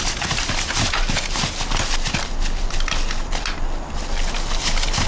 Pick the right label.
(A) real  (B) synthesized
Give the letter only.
A